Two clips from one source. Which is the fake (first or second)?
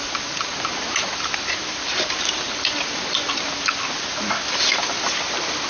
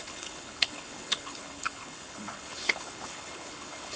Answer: second